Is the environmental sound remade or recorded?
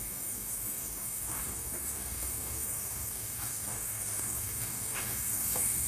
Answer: remade